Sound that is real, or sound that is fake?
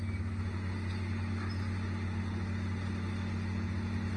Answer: real